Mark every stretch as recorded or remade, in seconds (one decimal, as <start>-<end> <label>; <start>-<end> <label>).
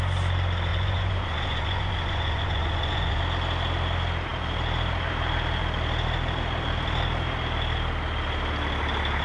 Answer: 0.0-0.7 recorded; 0.7-3.2 remade; 3.2-9.2 recorded